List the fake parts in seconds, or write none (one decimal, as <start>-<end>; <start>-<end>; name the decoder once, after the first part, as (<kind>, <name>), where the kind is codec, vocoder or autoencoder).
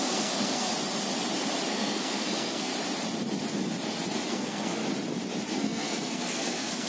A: 0.0-0.7 (codec, SNAC); 1.7-2.7; 4.3-4.8; 5.5-6.9